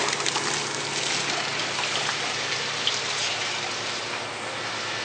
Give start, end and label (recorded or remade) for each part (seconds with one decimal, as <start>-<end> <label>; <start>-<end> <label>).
0.0-5.0 recorded